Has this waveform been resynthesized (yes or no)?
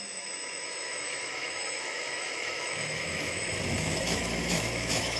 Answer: yes